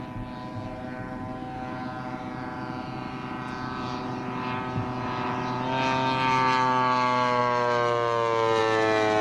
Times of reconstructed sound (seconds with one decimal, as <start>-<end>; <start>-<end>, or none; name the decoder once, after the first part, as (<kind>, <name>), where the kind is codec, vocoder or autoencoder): none